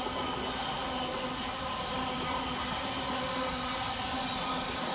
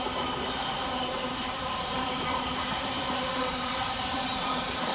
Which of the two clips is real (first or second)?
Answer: first